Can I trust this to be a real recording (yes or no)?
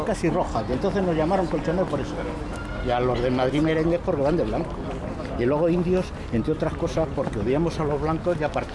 yes